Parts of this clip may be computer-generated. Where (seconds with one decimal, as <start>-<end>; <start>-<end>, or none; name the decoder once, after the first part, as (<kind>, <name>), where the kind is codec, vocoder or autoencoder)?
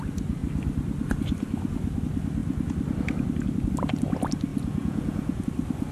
4.5-5.4 (vocoder, Vocos)